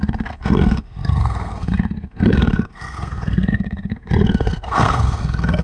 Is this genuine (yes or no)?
no